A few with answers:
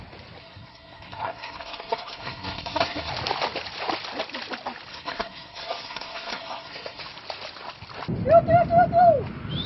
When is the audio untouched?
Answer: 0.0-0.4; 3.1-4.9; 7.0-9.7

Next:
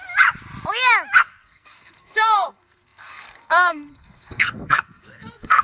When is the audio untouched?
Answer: 0.0-1.2

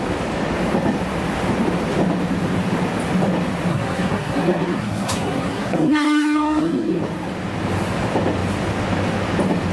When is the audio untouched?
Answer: 0.0-3.7; 7.0-9.7

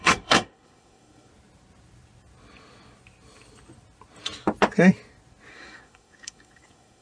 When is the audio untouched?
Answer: 1.3-5.5

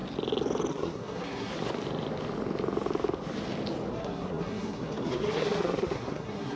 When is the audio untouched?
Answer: 0.0-0.7; 1.5-3.9

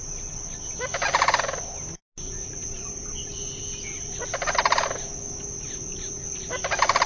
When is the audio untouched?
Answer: 0.0-2.6; 3.6-7.1